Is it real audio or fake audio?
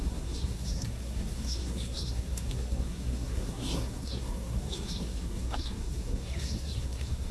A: fake